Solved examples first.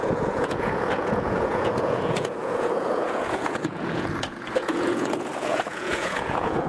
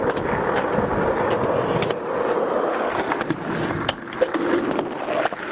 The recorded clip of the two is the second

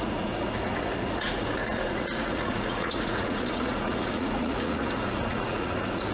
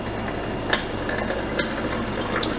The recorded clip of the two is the second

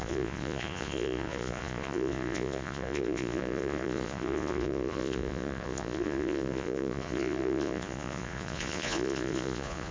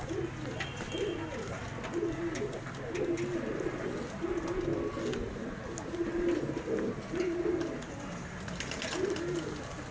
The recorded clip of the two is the second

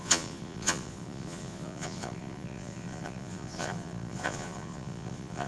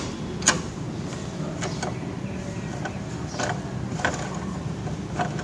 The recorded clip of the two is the second